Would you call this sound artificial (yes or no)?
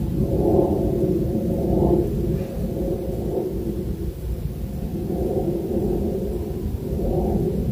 no